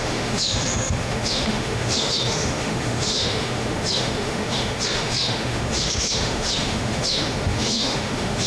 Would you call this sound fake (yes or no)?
yes